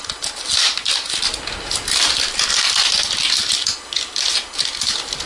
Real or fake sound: real